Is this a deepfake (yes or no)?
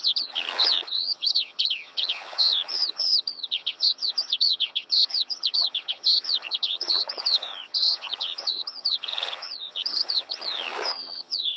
yes